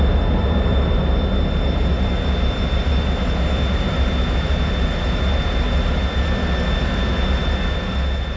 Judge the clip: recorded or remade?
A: recorded